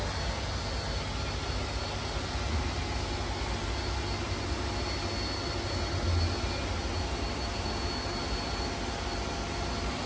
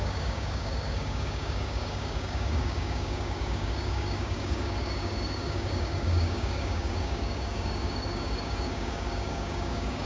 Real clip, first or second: first